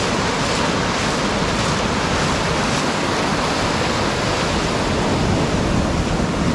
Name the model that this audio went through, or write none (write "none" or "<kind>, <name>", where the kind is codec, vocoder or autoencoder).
none